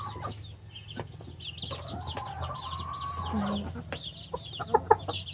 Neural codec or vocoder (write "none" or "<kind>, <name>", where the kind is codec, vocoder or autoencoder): none